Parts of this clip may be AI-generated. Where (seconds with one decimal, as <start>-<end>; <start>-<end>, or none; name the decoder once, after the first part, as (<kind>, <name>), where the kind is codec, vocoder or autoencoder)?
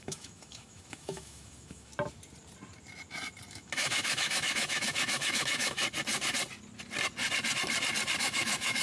0.0-1.9 (autoencoder, DAC-VAE); 3.5-5.8; 8.2-8.8